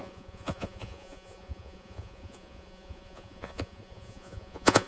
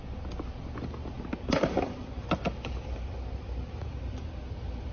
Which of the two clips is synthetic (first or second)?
first